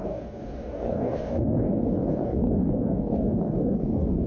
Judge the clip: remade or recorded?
remade